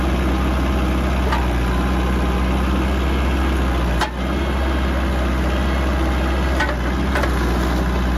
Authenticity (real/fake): real